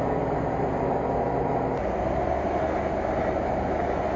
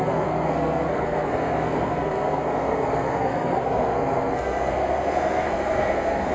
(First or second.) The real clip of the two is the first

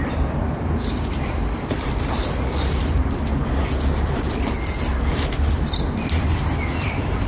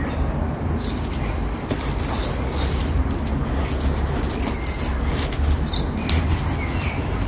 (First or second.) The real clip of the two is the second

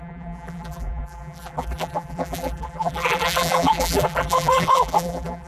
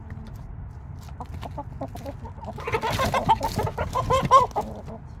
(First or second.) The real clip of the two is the second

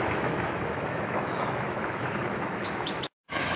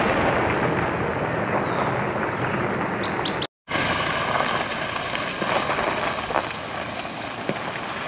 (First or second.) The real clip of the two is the second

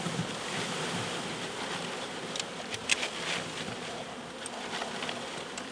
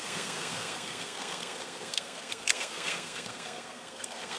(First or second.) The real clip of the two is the first